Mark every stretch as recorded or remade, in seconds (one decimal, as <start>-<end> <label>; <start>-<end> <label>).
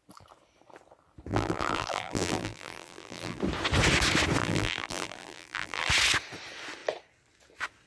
0.0-1.3 recorded; 1.3-3.4 remade; 3.4-4.4 recorded; 4.4-5.9 remade; 5.9-7.9 recorded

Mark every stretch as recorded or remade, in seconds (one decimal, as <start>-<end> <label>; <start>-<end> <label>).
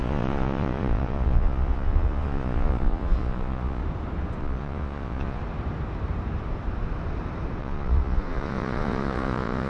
0.0-3.8 remade; 3.8-4.4 recorded; 4.4-5.4 remade; 5.4-7.6 recorded; 7.6-9.7 remade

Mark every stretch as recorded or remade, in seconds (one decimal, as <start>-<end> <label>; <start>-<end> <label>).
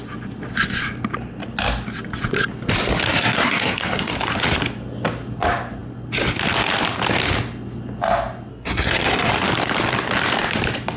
0.0-3.1 recorded; 3.1-4.1 remade; 4.1-8.5 recorded; 8.5-9.3 remade; 9.3-11.0 recorded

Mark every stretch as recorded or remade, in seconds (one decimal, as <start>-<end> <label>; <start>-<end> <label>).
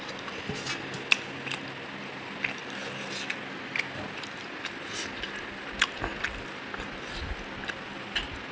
0.0-8.5 recorded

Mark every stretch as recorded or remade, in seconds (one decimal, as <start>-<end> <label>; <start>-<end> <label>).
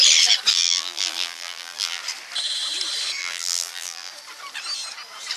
0.0-0.5 recorded; 0.5-2.0 remade; 2.0-3.2 recorded; 3.2-4.1 remade; 4.1-5.4 recorded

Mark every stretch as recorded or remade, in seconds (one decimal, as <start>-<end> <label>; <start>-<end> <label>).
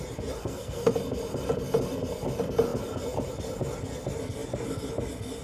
0.0-0.4 recorded; 0.4-0.9 remade; 0.9-5.4 recorded